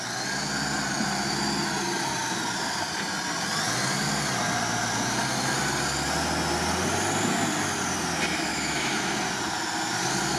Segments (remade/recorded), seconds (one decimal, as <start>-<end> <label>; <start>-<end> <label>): 0.0-8.5 recorded; 8.5-9.1 remade; 9.1-10.4 recorded